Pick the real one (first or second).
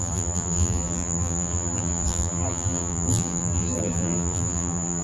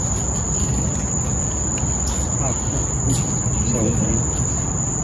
second